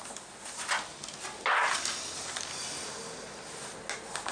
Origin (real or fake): real